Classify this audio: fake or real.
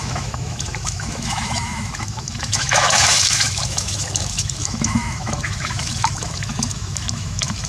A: fake